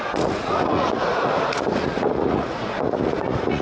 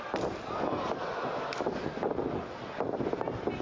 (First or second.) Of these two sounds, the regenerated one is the first